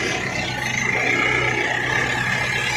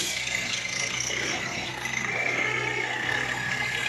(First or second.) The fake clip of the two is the second